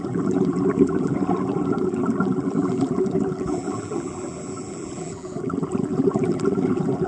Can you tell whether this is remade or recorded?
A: remade